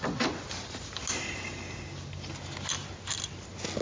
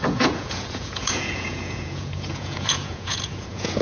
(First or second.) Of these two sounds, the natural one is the first